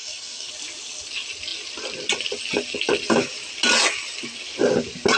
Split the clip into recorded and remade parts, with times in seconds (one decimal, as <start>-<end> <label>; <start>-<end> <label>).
0.0-0.5 remade; 0.5-5.2 recorded